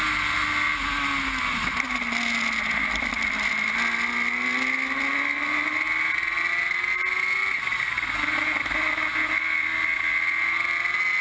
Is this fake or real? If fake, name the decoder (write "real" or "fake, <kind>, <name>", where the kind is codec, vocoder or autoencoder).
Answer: real